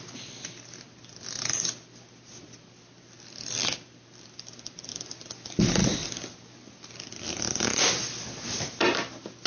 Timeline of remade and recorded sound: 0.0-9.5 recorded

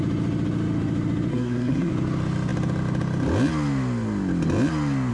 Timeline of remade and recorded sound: 0.0-1.3 recorded; 1.3-1.9 remade; 1.9-5.1 recorded

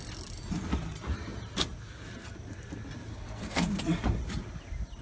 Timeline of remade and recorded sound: 0.0-3.1 recorded; 3.1-3.7 remade; 3.7-5.0 recorded

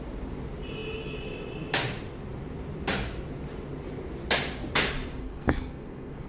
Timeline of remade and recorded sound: 0.0-5.2 recorded; 5.2-6.3 remade

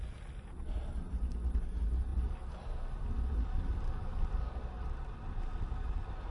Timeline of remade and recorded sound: 0.0-6.3 recorded